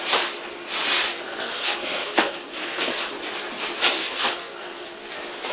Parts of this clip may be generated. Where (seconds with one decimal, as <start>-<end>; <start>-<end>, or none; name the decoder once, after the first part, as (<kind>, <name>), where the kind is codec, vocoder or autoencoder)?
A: 1.1-3.0 (codec, SNAC); 4.0-5.1